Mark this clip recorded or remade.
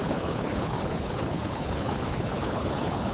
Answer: remade